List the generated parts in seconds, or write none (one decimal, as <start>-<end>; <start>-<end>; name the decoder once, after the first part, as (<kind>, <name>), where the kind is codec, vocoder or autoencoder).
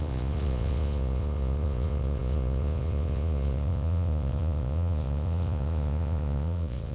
0.0-6.9 (vocoder, Vocos)